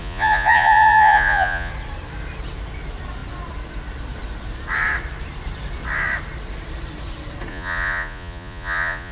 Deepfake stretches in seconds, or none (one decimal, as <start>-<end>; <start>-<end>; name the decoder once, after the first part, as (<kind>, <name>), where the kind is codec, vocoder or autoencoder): 0.0-1.7 (vocoder, Vocos); 7.5-9.1